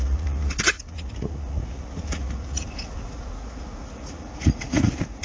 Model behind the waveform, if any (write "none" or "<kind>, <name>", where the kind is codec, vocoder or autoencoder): vocoder, Vocos